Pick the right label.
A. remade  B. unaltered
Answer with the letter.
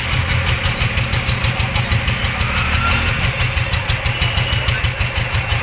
B